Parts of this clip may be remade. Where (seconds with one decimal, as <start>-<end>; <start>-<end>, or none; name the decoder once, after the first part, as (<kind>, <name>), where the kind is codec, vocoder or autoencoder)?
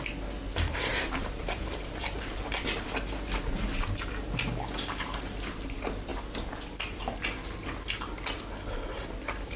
0.9-2.9 (vocoder, BigVGAN v2)